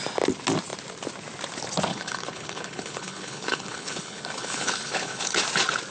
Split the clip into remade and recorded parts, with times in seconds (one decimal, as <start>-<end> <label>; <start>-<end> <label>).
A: 0.0-1.9 recorded; 1.9-5.4 remade; 5.4-5.9 recorded